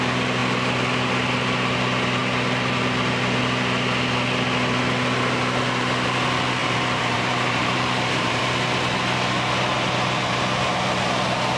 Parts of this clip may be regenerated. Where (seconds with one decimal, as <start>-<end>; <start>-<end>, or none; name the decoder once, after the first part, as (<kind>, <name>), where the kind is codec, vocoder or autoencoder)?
6.6-8.4 (vocoder, BigVGAN v2)